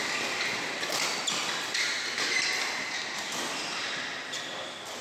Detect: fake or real real